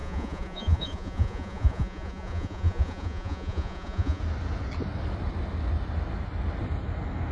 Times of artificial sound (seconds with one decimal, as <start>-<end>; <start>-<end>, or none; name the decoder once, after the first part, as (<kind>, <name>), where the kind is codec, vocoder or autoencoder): 0.0-4.2 (vocoder, Vocos)

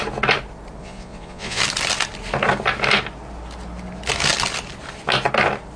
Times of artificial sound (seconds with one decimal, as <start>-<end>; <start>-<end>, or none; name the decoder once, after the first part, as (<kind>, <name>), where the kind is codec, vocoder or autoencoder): 0.8-1.6 (vocoder, Vocos)

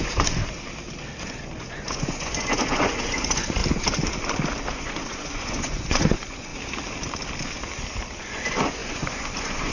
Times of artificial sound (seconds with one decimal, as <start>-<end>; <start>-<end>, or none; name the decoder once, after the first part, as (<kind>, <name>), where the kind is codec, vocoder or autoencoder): 0.0-0.4 (vocoder, Vocos); 1.2-3.6; 4.7-6.5; 8.2-9.7

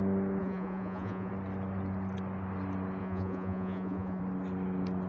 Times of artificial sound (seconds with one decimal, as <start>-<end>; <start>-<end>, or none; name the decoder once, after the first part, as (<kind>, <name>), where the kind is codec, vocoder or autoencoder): 0.4-1.3 (vocoder, Vocos); 3.0-4.2

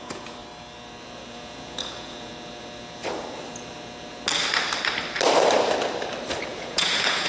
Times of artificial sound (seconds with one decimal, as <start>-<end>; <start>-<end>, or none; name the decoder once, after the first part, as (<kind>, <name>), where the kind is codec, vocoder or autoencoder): 0.0-0.4 (vocoder, Vocos); 1.3-2.3; 6.5-7.3